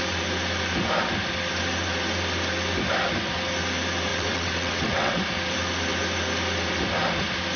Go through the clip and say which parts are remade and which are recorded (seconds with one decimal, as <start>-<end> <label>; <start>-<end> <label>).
0.0-4.1 recorded; 4.1-5.2 remade; 5.2-7.6 recorded